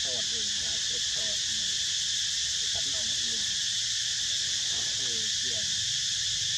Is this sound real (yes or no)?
yes